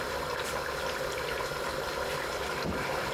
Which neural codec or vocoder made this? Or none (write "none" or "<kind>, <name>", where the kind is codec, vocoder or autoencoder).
none